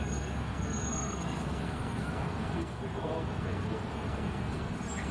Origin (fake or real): fake